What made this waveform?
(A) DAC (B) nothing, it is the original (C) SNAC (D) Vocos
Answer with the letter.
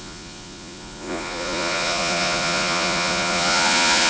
D